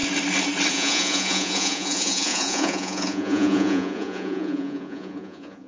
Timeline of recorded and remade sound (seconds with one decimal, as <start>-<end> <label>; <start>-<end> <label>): 0.0-0.7 recorded; 0.7-5.7 remade

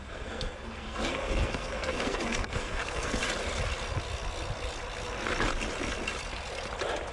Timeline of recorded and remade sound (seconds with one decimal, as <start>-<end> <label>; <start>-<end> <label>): 0.0-3.2 remade; 3.2-7.1 recorded

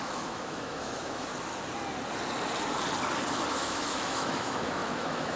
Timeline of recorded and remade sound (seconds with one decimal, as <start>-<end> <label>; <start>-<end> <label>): 0.0-1.3 remade; 1.3-3.5 recorded; 3.5-5.4 remade

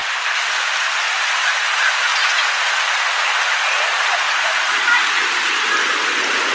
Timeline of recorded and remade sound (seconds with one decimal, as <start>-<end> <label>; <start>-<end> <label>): 0.0-2.1 recorded; 2.1-5.1 remade; 5.1-6.5 recorded

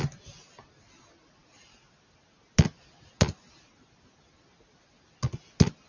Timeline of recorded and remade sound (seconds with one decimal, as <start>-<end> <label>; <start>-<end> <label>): 0.0-5.9 recorded

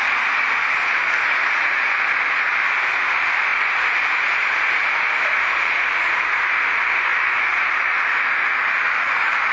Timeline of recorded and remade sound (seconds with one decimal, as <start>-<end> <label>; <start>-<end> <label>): 0.0-9.5 recorded

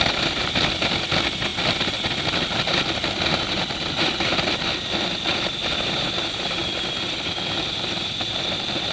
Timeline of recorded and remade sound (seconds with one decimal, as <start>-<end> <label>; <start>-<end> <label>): 0.0-8.9 recorded